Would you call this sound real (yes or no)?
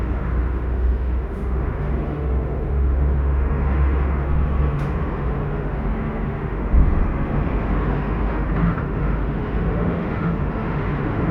no